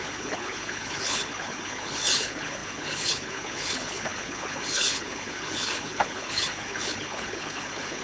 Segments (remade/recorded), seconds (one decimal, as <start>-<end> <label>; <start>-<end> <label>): 0.0-8.0 remade